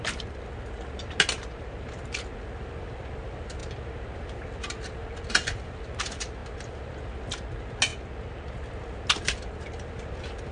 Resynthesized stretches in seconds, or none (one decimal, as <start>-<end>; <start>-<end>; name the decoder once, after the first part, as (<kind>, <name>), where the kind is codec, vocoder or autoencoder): none